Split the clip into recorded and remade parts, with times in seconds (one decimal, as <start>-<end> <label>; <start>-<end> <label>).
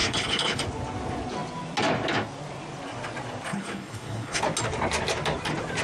0.0-0.6 remade; 0.6-3.5 recorded; 3.5-4.4 remade; 4.4-5.8 recorded